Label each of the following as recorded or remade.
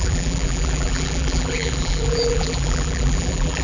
remade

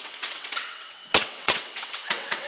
remade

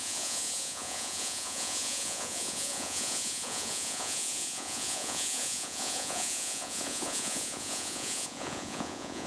remade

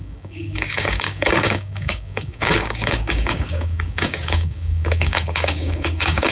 remade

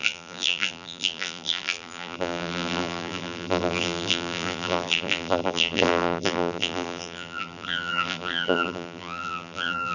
remade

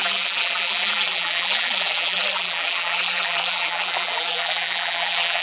remade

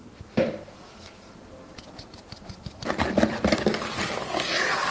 recorded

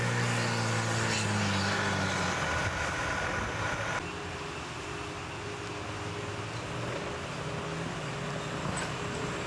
recorded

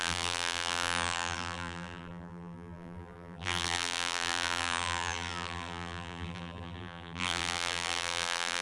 remade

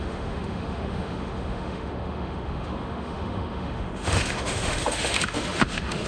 remade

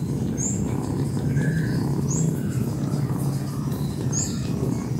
recorded